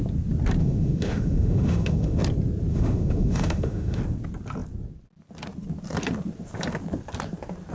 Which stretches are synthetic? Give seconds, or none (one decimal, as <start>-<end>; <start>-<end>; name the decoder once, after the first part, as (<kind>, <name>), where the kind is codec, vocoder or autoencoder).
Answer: 0.6-2.2 (autoencoder, DAC-VAE); 2.7-4.0